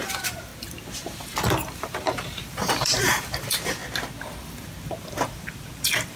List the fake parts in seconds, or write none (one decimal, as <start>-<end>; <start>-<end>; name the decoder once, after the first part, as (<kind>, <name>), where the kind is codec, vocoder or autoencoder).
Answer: 0.0-0.5 (vocoder, BigVGAN v2); 1.8-3.8; 5.0-6.2